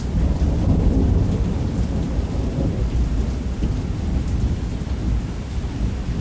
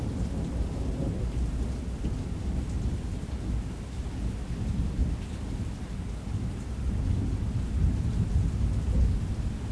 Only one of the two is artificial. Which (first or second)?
first